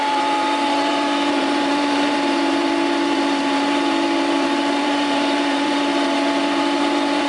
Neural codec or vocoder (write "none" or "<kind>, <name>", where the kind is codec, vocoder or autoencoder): vocoder, BigVGAN v2